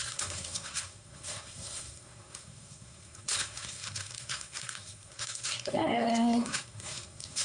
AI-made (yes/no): yes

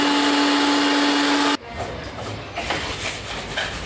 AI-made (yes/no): no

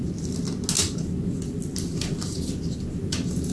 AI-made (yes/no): no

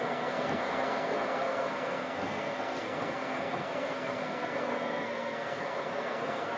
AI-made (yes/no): yes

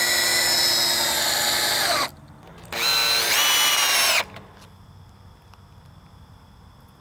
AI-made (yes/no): no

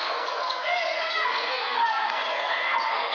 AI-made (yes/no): yes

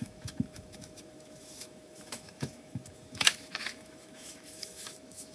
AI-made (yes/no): yes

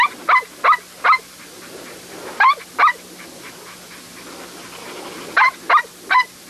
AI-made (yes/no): no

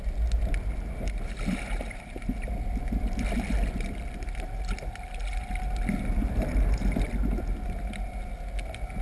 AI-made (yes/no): no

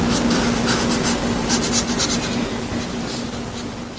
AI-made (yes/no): no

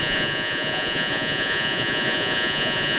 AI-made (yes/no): yes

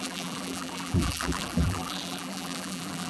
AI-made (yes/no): yes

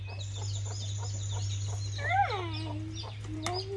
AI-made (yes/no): no